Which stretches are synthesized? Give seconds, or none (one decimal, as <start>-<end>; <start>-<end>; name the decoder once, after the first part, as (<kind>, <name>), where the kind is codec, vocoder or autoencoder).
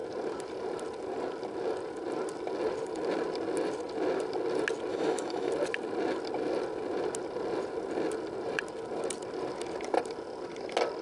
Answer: 4.9-5.5 (autoencoder, DAC-VAE)